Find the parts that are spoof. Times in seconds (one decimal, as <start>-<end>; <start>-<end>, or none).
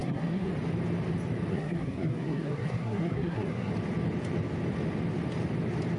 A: 0.0-0.5; 1.5-3.7